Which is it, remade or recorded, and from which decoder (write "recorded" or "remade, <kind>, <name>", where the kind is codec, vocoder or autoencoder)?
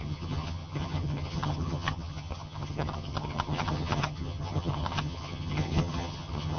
remade, vocoder, HiFi-GAN